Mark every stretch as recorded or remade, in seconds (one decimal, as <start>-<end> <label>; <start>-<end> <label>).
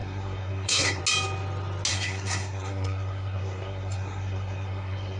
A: 0.0-1.0 remade; 1.0-1.9 recorded; 1.9-5.2 remade